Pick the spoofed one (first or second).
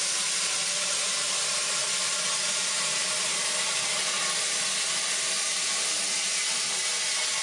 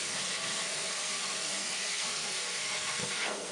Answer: second